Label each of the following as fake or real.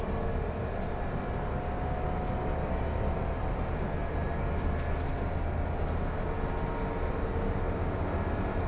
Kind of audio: real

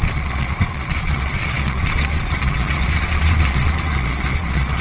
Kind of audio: fake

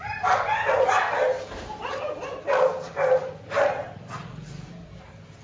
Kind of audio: real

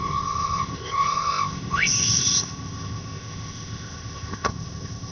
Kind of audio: fake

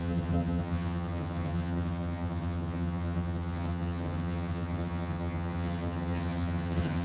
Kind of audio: fake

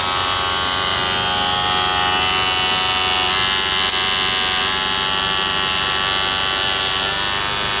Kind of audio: real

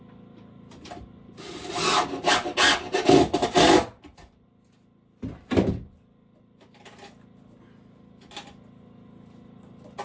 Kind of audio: real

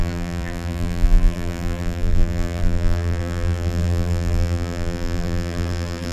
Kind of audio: fake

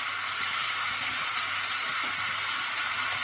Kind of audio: real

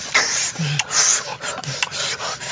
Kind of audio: real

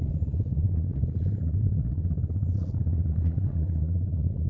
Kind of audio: fake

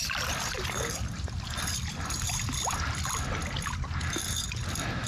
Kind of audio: real